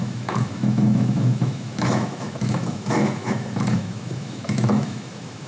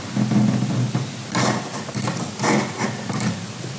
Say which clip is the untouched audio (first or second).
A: second